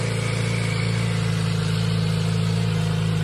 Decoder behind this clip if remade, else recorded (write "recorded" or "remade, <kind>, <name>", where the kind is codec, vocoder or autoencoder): recorded